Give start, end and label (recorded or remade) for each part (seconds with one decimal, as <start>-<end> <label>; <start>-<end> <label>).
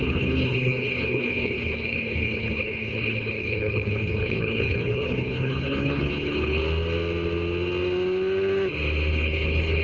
0.0-6.6 remade; 6.6-9.1 recorded; 9.1-9.8 remade